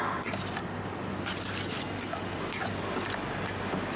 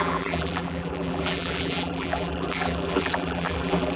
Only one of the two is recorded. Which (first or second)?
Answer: first